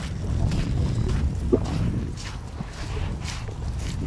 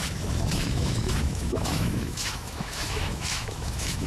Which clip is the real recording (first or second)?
first